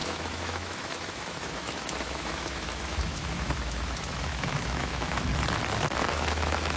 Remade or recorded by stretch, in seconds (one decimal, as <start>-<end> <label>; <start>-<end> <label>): 0.0-5.3 remade; 5.3-6.0 recorded; 6.0-6.8 remade